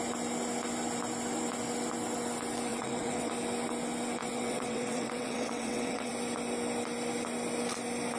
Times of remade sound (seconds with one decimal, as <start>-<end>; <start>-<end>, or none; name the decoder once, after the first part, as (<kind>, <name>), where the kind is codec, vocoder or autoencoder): 2.7-3.3 (vocoder, WaveNeXt); 4.2-6.1